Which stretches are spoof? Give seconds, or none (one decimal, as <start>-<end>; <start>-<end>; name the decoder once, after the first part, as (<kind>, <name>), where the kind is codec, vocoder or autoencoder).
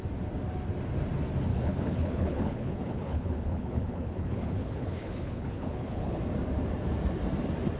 1.5-6.2 (codec, HILCodec)